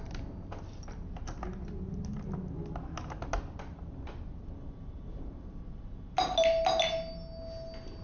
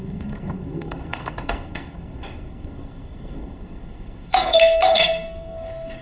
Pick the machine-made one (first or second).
second